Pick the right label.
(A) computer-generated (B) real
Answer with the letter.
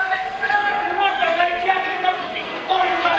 A